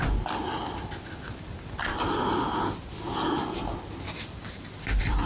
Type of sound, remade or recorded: recorded